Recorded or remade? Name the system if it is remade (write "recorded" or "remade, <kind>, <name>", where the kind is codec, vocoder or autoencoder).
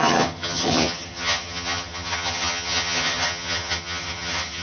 remade, vocoder, HiFi-GAN